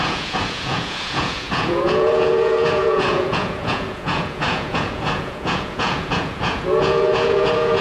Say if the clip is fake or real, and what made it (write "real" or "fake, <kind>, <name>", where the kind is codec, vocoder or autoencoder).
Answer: fake, vocoder, Vocos